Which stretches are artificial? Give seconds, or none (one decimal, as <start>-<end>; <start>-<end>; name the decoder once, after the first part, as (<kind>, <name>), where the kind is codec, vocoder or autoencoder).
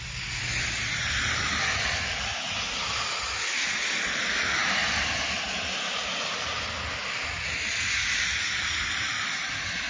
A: 4.8-6.6 (vocoder, BigVGAN v2)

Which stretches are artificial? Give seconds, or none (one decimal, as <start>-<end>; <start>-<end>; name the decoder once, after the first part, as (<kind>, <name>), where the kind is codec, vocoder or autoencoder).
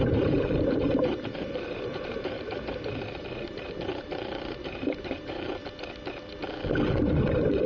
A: 0.0-5.6 (vocoder, BigVGAN v2); 7.3-7.7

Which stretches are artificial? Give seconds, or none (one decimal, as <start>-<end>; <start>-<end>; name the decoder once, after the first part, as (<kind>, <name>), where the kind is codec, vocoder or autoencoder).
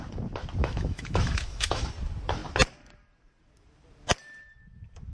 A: 0.6-1.9 (autoencoder, DAC-VAE)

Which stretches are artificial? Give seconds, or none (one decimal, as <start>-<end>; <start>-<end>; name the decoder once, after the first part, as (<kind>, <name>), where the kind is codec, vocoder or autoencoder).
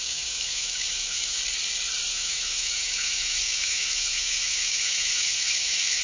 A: 0.0-1.4 (autoencoder, DAC-VAE); 2.1-6.0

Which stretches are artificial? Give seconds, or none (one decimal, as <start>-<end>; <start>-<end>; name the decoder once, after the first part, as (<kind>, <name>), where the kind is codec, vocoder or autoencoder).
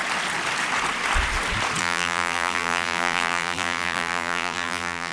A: 1.8-5.1 (vocoder, BigVGAN v2)